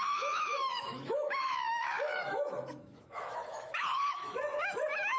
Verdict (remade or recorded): remade